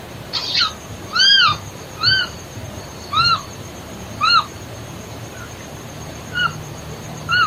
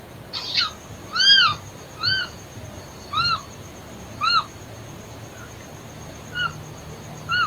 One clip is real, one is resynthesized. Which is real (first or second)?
second